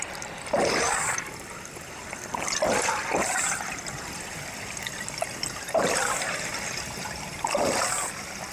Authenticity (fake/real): real